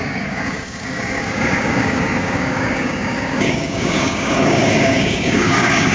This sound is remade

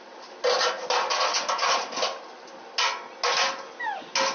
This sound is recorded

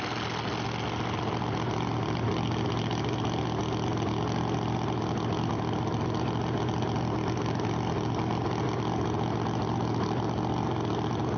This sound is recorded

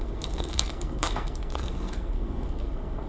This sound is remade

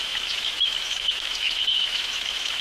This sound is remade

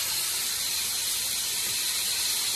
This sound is recorded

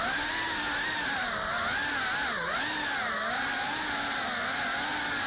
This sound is recorded